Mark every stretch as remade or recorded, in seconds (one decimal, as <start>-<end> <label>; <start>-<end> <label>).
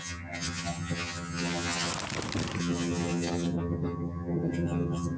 0.0-1.9 remade; 1.9-2.6 recorded; 2.6-5.2 remade